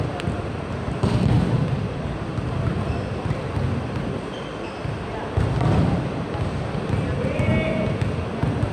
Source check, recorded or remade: recorded